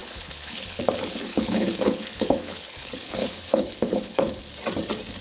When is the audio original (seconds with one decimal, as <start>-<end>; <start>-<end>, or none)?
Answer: 0.8-1.3; 4.4-5.2

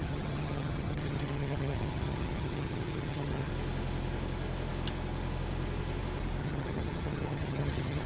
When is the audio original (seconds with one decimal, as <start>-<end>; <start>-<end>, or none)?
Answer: 3.5-6.4

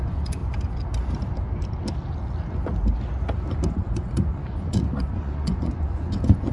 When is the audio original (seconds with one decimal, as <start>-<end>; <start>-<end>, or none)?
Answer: 0.4-3.7